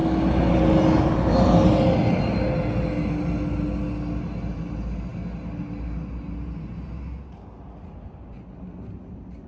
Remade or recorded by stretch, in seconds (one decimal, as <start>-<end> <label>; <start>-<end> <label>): 0.0-9.5 recorded